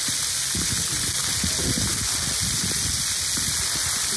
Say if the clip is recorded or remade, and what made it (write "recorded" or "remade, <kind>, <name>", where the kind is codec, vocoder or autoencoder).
recorded